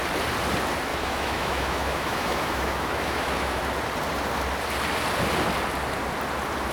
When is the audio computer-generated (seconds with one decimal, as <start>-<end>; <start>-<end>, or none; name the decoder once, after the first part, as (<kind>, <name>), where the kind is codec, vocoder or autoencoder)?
0.9-3.6 (autoencoder, DAC-VAE)

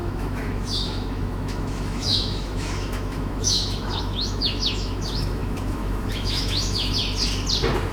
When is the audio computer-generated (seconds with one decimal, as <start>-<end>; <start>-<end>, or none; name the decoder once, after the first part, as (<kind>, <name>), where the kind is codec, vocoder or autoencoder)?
0.0-7.0 (autoencoder, DAC-VAE)

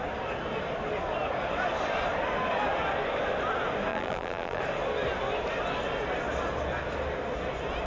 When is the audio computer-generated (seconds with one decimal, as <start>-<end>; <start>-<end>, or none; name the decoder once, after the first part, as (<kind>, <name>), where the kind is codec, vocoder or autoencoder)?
3.9-4.6 (vocoder, BigVGAN v2)